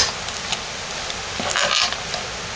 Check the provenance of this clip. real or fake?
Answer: real